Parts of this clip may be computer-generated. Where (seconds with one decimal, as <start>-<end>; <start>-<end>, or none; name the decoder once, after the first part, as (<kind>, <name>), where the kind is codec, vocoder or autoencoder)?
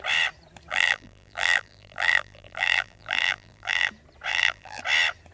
0.7-3.9 (vocoder, BigVGAN v2); 4.3-4.8